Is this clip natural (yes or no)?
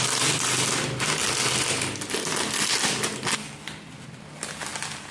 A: yes